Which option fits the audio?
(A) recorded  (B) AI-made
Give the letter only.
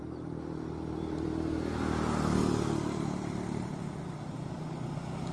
B